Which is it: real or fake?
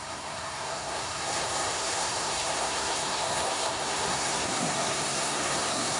fake